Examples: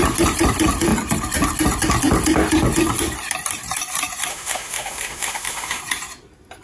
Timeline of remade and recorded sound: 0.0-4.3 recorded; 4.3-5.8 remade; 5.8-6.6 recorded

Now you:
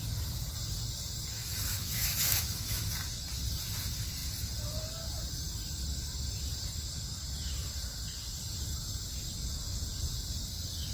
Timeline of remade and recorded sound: 0.0-1.3 recorded; 1.3-2.9 remade; 2.9-10.9 recorded

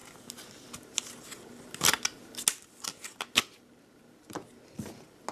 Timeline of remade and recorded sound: 0.0-5.3 recorded

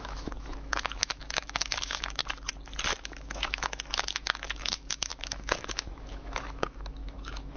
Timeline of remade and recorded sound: 0.0-2.2 remade; 2.2-3.0 recorded; 3.0-7.6 remade